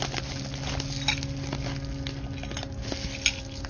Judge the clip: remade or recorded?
recorded